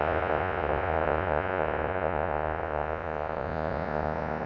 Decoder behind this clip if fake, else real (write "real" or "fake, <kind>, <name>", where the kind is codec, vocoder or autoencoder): fake, vocoder, Vocos